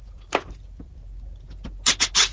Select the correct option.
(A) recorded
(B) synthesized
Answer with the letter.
A